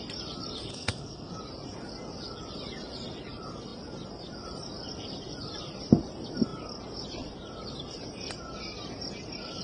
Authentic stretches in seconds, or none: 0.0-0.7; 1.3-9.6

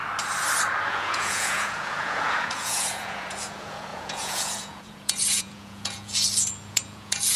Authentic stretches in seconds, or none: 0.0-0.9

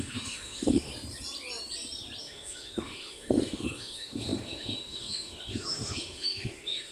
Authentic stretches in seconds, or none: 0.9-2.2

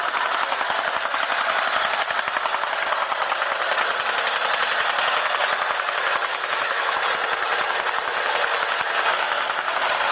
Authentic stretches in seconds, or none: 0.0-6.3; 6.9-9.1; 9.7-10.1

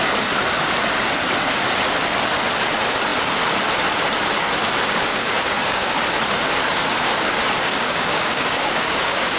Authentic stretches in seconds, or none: 0.0-5.1; 5.9-7.7